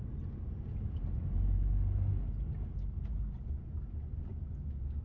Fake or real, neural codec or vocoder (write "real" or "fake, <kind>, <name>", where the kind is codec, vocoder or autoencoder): real